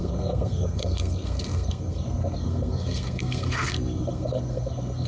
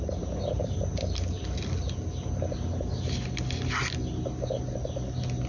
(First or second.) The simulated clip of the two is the first